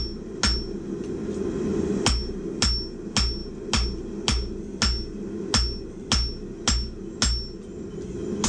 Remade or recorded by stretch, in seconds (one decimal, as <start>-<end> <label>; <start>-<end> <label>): 0.0-8.5 recorded